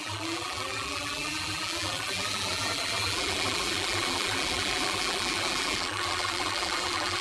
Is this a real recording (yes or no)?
no